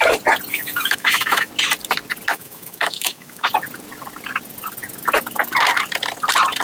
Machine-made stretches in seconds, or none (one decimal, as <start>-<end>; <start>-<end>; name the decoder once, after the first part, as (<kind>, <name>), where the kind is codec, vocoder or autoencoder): 0.5-1.5 (autoencoder, DAC-VAE); 2.3-3.5